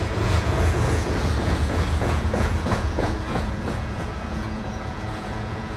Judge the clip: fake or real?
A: fake